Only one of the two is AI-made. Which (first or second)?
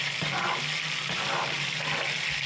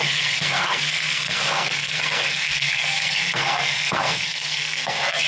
second